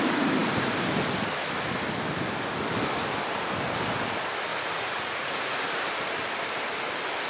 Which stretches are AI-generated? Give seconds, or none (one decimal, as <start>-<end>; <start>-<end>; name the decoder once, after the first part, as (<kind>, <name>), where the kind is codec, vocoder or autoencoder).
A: 4.5-5.6 (vocoder, Vocos)

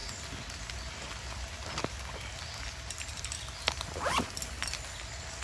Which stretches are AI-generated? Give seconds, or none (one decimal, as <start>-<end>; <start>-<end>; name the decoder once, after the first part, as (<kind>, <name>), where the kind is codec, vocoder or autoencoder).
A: none

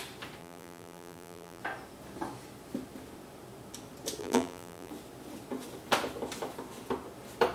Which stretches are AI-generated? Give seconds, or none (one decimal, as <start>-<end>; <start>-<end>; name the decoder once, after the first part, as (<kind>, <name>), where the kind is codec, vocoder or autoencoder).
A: 0.4-1.6 (vocoder, BigVGAN v2); 4.2-4.9

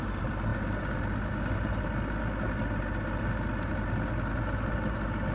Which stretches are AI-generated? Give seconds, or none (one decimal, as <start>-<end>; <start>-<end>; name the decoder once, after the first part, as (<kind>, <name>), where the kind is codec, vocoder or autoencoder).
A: none

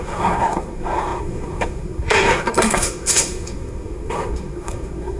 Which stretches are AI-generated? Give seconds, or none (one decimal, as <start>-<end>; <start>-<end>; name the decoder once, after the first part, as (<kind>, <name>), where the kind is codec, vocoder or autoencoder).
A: 0.0-5.2 (codec, SNAC)

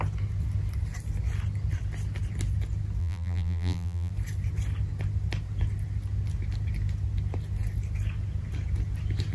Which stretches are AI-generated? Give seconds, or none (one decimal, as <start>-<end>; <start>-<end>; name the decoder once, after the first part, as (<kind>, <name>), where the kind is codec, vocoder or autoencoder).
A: 3.0-4.1 (vocoder, BigVGAN v2)

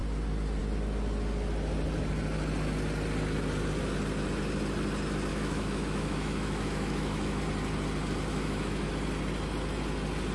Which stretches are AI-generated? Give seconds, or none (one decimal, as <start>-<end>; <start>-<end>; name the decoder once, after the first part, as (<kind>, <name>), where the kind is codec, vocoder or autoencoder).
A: 5.3-7.4 (autoencoder, DAC-VAE); 8.3-8.9